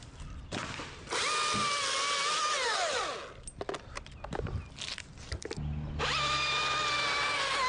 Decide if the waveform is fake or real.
real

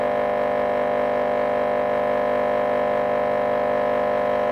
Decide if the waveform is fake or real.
real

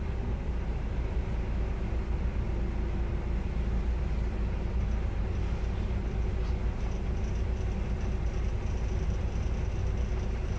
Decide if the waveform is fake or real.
real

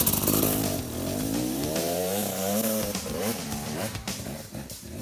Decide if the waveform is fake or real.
fake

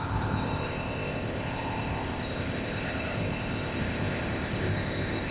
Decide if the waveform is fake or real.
fake